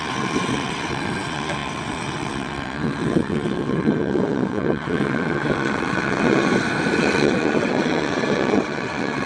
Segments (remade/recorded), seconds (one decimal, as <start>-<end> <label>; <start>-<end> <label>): 0.0-6.5 remade; 6.5-7.0 recorded; 7.0-9.3 remade